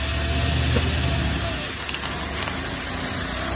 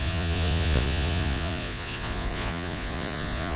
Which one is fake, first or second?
second